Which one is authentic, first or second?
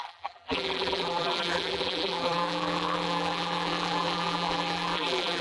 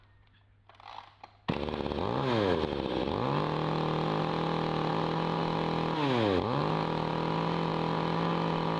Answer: second